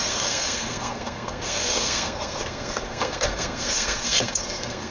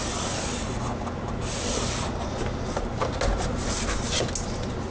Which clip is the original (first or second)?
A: second